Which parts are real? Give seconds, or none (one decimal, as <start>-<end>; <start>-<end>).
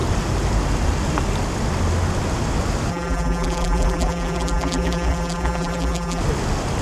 0.0-2.9; 6.2-6.8